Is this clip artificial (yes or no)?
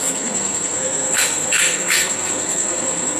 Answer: yes